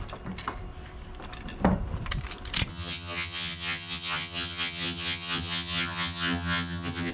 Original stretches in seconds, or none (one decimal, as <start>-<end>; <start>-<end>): 0.0-2.7